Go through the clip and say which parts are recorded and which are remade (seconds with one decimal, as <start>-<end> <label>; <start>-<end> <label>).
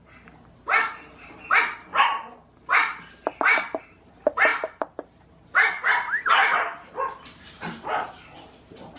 0.0-1.2 recorded; 1.2-1.9 remade; 1.9-3.4 recorded; 3.4-9.0 remade